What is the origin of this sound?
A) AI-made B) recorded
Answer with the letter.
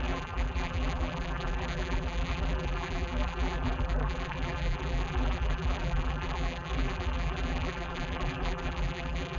A